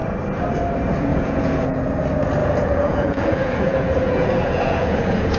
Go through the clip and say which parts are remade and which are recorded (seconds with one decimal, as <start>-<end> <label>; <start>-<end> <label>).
0.0-1.1 recorded; 1.1-1.9 remade; 1.9-2.4 recorded; 2.4-5.4 remade